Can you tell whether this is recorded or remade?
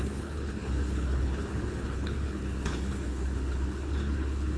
remade